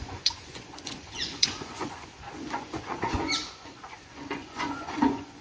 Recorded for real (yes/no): no